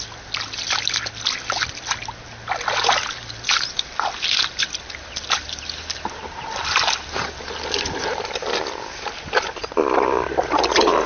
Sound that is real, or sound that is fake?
real